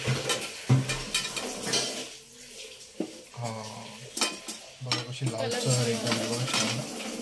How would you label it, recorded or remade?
recorded